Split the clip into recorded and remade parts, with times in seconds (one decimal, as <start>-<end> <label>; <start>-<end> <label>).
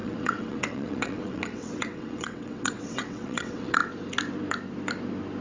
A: 0.0-3.8 remade; 3.8-5.4 recorded